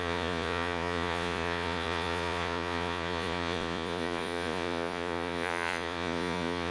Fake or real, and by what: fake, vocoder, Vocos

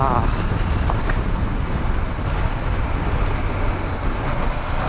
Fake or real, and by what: real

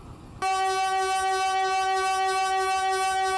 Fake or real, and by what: real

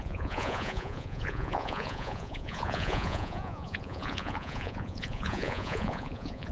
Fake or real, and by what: fake, vocoder, Vocos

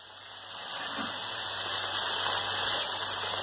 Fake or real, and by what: real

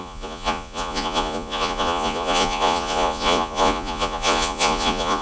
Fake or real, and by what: fake, vocoder, Vocos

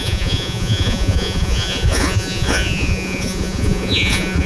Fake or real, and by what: fake, vocoder, Vocos